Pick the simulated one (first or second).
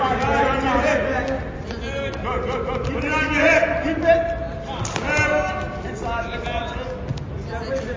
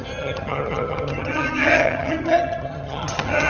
second